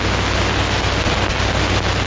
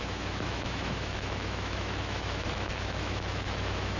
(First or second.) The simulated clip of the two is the second